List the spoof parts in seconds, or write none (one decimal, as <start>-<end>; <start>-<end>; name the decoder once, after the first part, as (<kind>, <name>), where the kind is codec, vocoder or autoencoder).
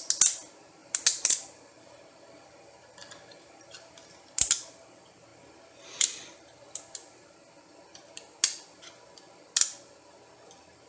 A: none